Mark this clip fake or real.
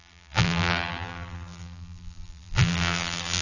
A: fake